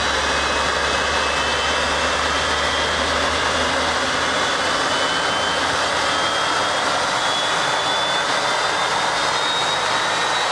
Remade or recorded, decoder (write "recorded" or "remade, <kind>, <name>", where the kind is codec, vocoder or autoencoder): recorded